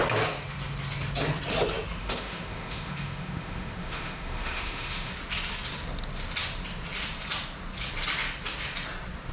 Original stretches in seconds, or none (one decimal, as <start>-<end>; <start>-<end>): 0.0-2.0; 5.1-9.3